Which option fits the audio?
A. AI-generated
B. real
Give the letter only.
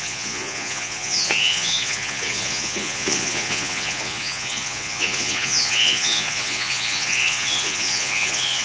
A